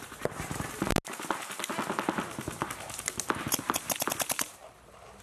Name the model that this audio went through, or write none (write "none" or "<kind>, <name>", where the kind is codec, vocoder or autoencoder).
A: none